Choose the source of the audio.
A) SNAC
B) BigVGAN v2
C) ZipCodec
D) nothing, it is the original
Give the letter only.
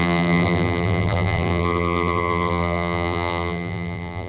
B